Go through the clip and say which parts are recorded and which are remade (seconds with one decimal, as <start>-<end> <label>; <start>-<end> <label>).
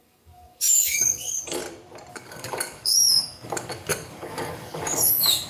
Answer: 0.0-1.6 remade; 1.6-2.1 recorded; 2.1-5.5 remade